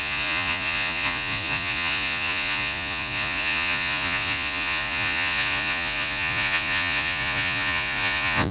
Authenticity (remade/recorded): remade